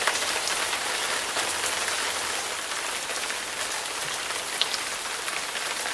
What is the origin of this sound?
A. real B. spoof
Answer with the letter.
A